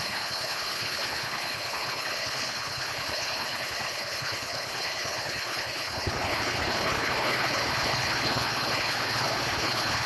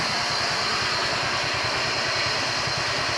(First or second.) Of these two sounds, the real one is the second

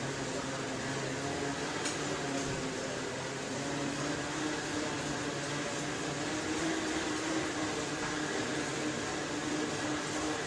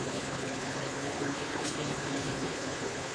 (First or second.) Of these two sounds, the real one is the first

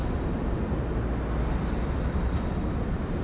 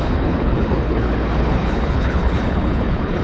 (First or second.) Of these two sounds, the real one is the first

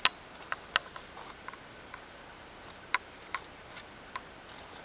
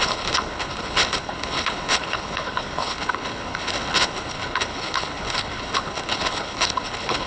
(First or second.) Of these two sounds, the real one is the first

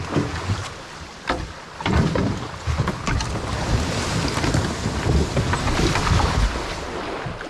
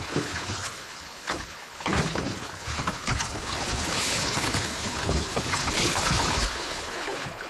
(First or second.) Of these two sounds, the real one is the first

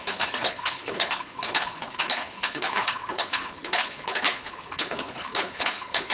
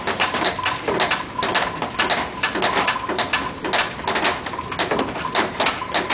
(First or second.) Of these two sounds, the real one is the second